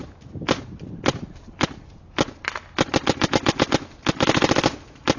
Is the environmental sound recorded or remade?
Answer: recorded